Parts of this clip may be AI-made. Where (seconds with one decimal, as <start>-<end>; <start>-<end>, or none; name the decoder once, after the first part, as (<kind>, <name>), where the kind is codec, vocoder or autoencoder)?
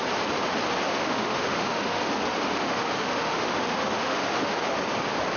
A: 0.9-2.1 (autoencoder, DAC-VAE); 2.5-4.8